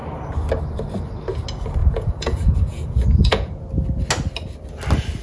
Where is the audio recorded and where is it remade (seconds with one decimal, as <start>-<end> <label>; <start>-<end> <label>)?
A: 0.0-1.8 recorded; 1.8-3.7 remade; 3.7-5.2 recorded